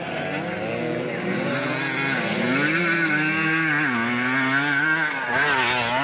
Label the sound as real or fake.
real